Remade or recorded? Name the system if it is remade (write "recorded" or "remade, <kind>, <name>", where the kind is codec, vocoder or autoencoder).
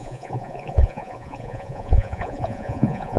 remade, vocoder, Vocos